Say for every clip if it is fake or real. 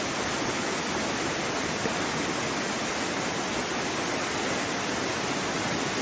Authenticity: real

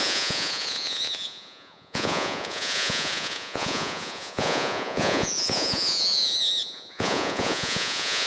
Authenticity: fake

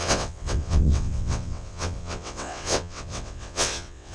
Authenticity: fake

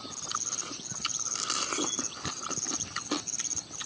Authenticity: real